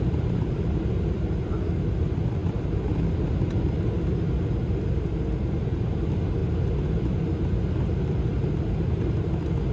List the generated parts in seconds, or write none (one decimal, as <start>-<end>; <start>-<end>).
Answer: none